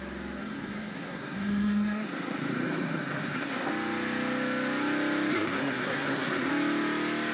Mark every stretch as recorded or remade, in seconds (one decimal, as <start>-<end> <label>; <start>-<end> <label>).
0.0-0.4 recorded; 0.4-3.7 remade; 3.7-5.3 recorded; 5.3-6.5 remade; 6.5-7.3 recorded